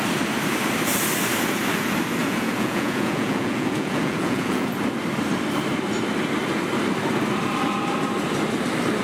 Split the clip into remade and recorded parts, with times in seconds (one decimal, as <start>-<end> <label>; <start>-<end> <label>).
0.0-2.2 recorded; 2.2-4.7 remade; 4.7-9.0 recorded